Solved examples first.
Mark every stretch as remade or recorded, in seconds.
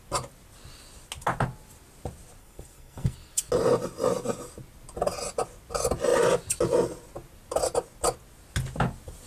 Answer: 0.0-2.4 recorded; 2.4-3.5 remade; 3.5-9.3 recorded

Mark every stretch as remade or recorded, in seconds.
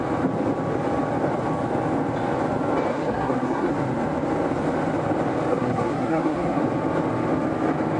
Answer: 0.0-2.9 recorded; 2.9-3.7 remade; 3.7-5.5 recorded; 5.5-6.6 remade; 6.6-8.0 recorded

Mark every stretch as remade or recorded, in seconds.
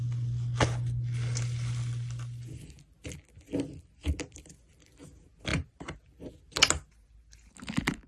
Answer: 0.0-5.5 recorded; 5.5-6.3 remade; 6.3-8.1 recorded